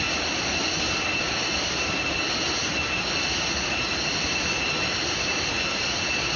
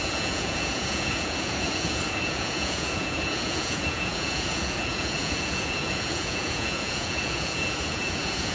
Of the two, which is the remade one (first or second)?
second